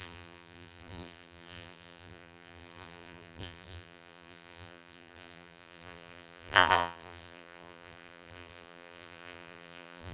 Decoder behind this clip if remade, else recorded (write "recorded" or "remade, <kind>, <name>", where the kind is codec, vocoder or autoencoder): remade, vocoder, BigVGAN v2